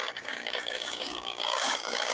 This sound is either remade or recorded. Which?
remade